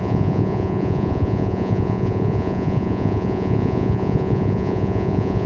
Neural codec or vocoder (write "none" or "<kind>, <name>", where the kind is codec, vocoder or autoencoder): vocoder, Vocos